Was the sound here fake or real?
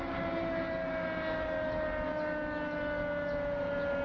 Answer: real